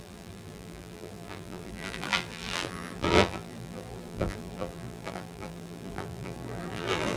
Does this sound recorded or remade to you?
remade